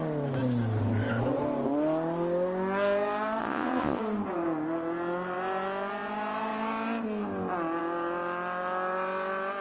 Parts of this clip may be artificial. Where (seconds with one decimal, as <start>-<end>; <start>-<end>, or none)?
3.4-4.0